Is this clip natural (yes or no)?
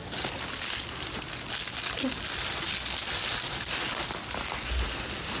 yes